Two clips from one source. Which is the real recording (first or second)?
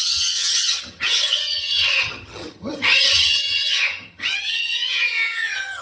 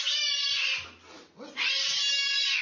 second